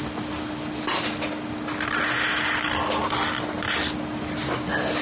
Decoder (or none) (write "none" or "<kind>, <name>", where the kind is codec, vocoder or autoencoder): none